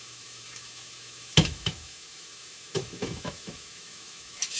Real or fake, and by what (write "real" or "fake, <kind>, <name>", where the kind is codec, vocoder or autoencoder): fake, autoencoder, DAC-VAE